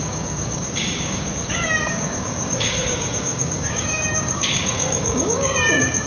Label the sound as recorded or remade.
remade